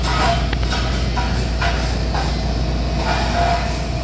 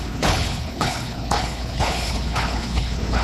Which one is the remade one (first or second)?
second